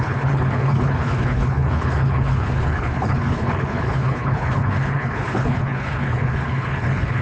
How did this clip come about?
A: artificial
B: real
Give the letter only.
A